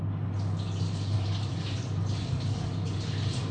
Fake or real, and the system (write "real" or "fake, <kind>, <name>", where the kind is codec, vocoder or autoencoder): real